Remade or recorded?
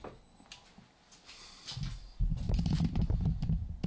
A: recorded